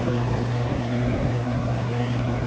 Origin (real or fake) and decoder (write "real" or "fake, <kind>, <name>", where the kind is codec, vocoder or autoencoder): fake, codec, SNAC